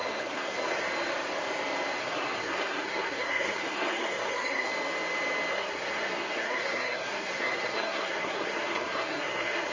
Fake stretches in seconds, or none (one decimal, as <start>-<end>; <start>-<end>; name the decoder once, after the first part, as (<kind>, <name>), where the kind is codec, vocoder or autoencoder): 0.0-0.8 (codec, SNAC); 2.0-4.7; 5.5-9.7